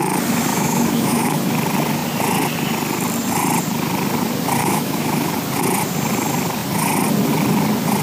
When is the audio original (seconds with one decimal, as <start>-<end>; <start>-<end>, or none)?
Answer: 0.0-0.5; 1.5-4.6; 5.3-8.0